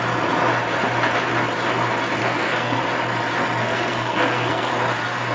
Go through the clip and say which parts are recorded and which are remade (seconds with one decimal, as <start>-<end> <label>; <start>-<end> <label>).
0.0-2.2 recorded; 2.2-2.8 remade; 2.8-3.6 recorded; 3.6-4.7 remade; 4.7-5.3 recorded